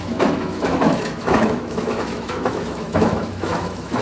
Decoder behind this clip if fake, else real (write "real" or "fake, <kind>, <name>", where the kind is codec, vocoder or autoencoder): fake, autoencoder, DAC-VAE